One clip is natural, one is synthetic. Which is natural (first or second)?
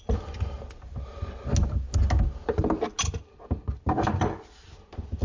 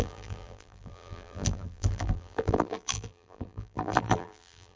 first